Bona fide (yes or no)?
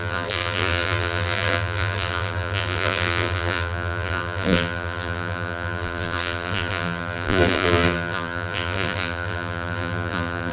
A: no